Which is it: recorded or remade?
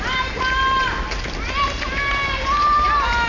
recorded